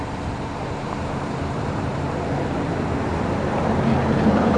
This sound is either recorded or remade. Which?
remade